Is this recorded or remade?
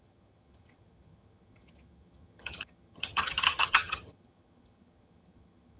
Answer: remade